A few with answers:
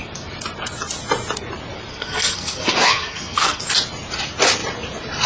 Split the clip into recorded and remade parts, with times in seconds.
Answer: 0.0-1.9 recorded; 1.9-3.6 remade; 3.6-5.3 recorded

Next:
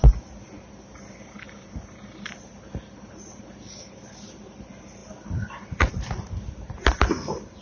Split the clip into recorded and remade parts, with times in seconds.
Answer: 0.0-7.6 recorded

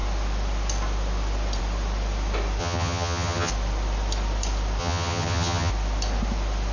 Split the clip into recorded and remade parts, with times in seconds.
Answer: 0.0-2.6 recorded; 2.6-3.5 remade; 3.5-4.8 recorded; 4.8-5.7 remade; 5.7-6.7 recorded